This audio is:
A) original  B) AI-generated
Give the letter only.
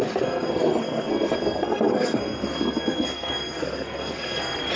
B